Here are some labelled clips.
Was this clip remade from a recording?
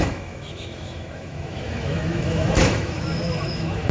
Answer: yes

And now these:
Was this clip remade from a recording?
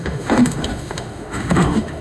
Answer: yes